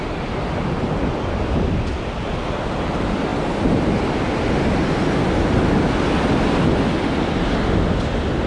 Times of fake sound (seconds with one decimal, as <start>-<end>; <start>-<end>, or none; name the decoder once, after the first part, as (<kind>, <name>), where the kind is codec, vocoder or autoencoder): none

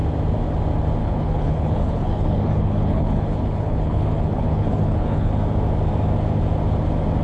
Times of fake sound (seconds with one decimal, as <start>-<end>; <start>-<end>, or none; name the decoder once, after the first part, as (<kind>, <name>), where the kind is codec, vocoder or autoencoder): 1.0-5.3 (codec, HILCodec)

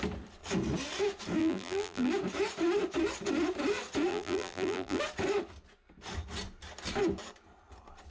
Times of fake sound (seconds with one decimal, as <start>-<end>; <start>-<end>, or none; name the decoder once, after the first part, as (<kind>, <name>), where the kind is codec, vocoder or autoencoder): 1.4-2.1 (vocoder, BigVGAN v2); 4.1-5.0

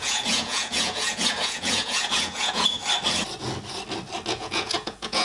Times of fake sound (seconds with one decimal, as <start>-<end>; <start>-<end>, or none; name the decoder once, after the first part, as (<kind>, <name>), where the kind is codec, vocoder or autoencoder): 0.0-2.8 (vocoder, Vocos); 4.3-5.2

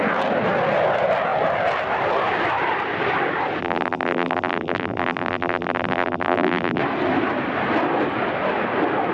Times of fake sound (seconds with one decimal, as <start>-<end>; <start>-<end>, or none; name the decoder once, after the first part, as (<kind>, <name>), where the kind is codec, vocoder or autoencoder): 3.6-6.8 (vocoder, BigVGAN v2)

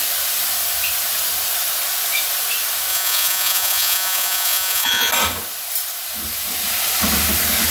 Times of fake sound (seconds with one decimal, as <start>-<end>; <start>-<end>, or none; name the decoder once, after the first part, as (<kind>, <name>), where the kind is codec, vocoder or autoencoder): 2.9-5.1 (vocoder, Vocos)

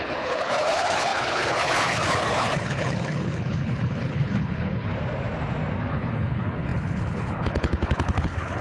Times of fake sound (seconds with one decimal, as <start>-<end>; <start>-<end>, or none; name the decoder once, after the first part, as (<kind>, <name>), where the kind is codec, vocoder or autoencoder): 0.0-4.9 (codec, HILCodec); 5.9-8.6

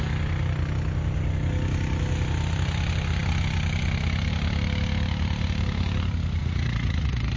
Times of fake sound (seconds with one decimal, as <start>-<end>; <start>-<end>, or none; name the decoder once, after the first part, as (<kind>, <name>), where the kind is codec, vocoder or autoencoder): 6.4-7.4 (vocoder, Vocos)